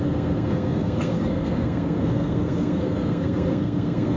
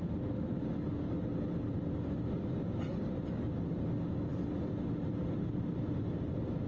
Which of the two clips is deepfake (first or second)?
first